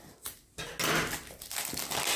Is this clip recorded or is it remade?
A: recorded